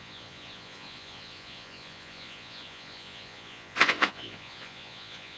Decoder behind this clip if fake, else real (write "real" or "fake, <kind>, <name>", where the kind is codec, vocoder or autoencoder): fake, vocoder, Vocos